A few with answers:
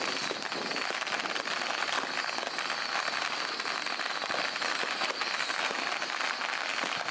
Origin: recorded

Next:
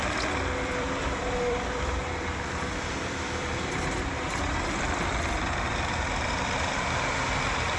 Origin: remade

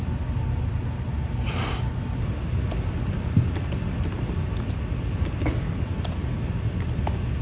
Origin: recorded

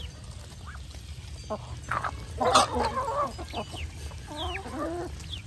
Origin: recorded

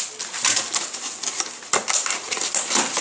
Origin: recorded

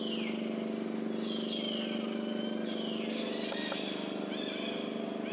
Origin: recorded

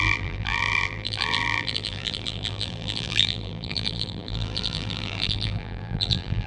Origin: remade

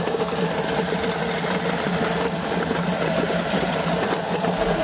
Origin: recorded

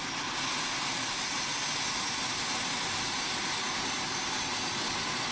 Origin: recorded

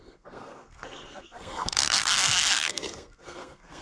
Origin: remade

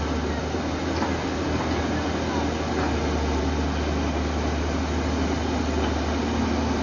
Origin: recorded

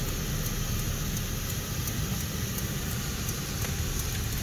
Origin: recorded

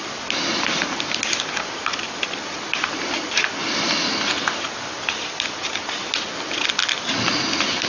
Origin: remade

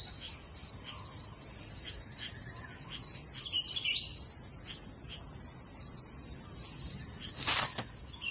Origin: recorded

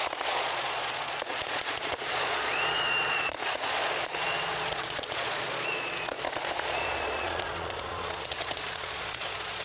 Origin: remade